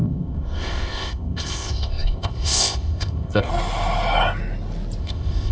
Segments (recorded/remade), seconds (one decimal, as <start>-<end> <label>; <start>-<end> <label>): 0.0-3.5 remade; 3.5-5.0 recorded; 5.0-5.5 remade